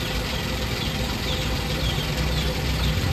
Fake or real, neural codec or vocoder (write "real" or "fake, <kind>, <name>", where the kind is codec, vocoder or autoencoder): fake, vocoder, BigVGAN v2